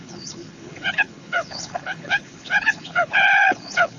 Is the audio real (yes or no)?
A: no